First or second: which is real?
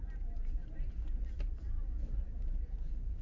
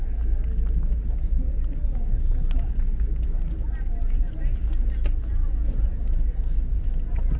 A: second